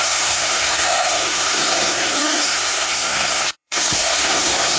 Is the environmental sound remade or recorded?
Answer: remade